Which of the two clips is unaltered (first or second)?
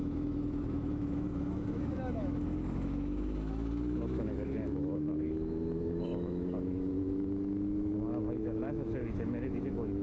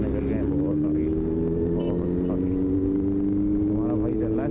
second